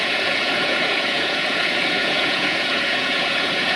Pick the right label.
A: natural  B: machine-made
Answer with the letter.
B